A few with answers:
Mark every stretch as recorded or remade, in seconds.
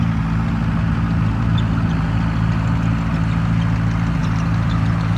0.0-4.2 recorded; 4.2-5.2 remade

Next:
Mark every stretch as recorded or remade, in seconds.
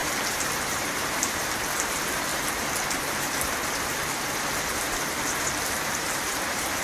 0.0-4.0 remade; 4.0-4.7 recorded; 4.7-6.8 remade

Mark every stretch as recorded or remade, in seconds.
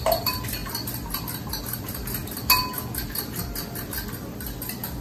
0.0-5.0 recorded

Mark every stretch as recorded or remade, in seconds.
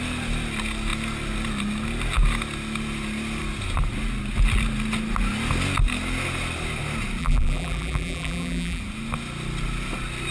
0.0-7.2 recorded; 7.2-8.8 remade; 8.8-10.3 recorded